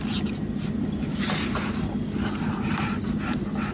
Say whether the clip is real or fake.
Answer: real